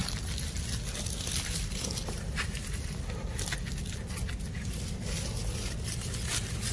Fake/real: real